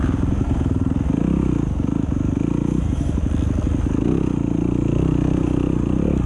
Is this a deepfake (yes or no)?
no